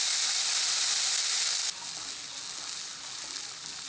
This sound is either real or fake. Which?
real